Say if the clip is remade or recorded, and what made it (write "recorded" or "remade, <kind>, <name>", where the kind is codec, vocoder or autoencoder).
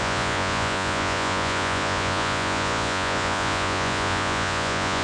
remade, vocoder, Vocos